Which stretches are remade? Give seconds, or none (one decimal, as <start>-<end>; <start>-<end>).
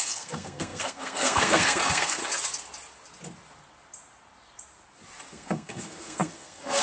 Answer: 0.0-2.2; 5.3-6.8